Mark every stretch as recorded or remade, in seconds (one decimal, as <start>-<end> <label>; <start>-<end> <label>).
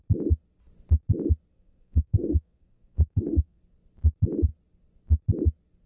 0.0-1.5 recorded; 1.5-3.6 remade; 3.6-5.9 recorded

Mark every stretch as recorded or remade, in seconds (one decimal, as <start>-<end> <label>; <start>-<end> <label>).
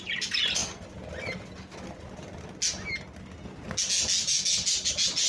0.0-5.3 recorded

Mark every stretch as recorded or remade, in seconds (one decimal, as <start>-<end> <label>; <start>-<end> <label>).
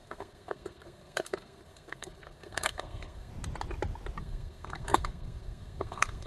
0.0-3.3 remade; 3.3-4.2 recorded; 4.2-6.3 remade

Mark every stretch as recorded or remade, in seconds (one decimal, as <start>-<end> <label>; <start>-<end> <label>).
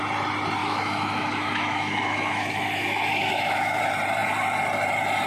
0.0-0.6 recorded; 0.6-3.8 remade; 3.8-5.3 recorded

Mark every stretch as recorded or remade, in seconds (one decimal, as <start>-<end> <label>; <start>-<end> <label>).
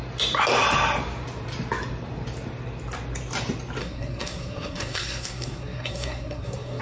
0.0-3.8 recorded; 3.8-6.8 remade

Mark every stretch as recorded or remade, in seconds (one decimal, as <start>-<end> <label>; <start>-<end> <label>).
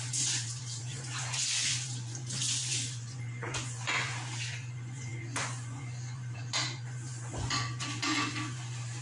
0.0-9.0 remade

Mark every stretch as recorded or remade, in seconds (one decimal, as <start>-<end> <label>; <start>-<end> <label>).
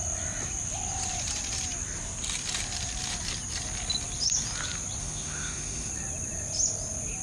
0.0-5.0 recorded; 5.0-5.9 remade; 5.9-7.2 recorded